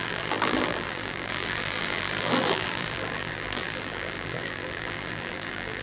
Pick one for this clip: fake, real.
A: fake